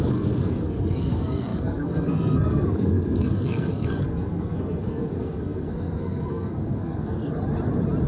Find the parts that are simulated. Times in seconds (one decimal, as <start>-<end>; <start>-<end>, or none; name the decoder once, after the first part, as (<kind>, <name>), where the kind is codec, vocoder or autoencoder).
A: 0.0-7.3 (codec, SNAC)